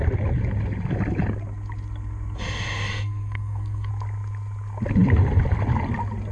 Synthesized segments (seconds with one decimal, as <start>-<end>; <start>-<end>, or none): 2.9-3.9